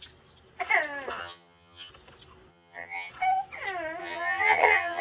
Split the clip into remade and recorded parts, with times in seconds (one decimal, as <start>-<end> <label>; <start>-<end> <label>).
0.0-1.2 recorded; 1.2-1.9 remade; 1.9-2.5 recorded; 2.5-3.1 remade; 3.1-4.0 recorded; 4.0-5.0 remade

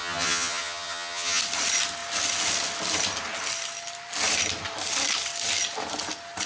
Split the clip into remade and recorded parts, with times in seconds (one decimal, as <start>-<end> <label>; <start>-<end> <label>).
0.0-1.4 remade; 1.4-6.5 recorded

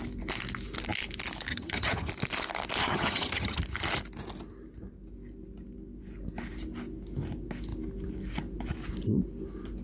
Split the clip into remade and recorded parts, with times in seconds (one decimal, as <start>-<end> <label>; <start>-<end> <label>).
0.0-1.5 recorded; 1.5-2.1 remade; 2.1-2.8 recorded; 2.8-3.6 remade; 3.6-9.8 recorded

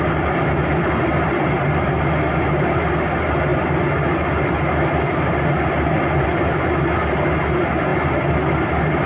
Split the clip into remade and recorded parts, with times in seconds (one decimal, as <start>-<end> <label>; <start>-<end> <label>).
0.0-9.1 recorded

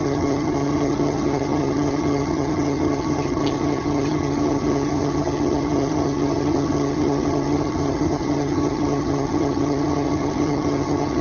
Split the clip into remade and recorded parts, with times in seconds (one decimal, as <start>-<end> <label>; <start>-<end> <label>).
0.0-11.2 remade

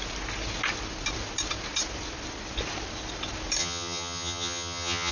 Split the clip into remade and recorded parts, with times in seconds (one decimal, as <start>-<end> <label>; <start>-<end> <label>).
0.0-3.6 recorded; 3.6-5.1 remade

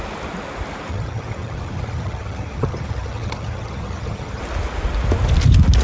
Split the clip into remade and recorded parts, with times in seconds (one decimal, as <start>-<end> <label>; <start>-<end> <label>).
0.0-0.9 recorded; 0.9-4.4 remade; 4.4-5.8 recorded